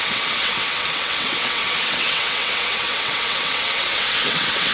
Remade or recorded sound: remade